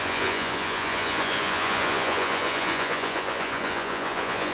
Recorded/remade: remade